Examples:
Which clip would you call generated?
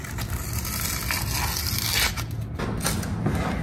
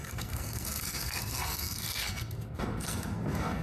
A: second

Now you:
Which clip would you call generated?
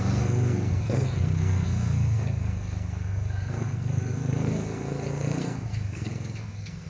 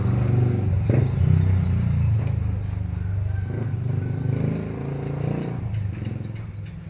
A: first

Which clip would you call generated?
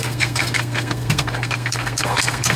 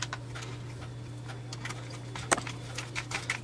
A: first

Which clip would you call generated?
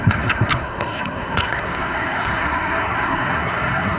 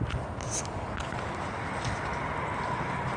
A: first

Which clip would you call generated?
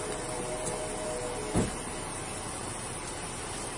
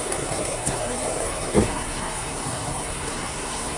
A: second